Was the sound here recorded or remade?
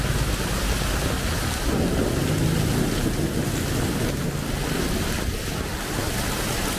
recorded